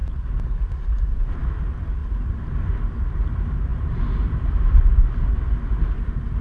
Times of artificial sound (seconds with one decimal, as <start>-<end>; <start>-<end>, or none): 0.0-1.4; 2.0-3.0; 3.7-4.9